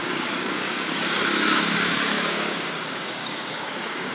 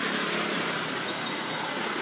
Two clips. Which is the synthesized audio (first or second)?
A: first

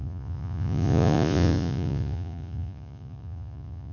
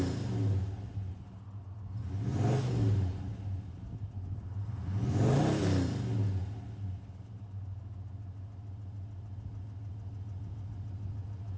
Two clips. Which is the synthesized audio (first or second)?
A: first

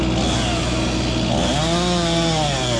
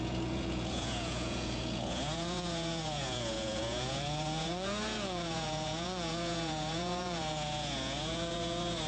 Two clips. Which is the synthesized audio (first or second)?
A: second